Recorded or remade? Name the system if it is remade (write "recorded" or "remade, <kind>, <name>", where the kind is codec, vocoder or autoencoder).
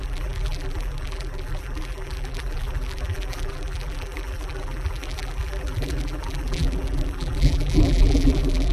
remade, vocoder, BigVGAN v2